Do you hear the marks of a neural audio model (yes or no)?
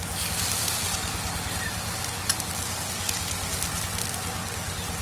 no